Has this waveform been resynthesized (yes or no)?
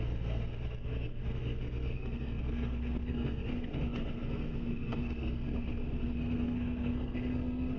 yes